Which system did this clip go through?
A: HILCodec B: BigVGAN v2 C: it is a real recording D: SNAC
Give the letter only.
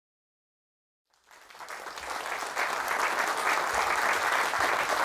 C